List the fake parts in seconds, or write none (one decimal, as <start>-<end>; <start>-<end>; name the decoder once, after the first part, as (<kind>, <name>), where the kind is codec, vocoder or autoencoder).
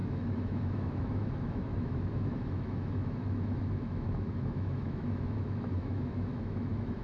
0.0-7.0 (autoencoder, DAC-VAE)